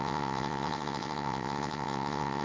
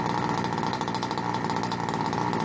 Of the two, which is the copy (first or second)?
first